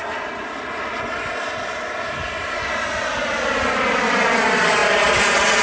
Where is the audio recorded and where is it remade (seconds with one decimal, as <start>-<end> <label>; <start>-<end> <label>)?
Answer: 0.0-5.6 recorded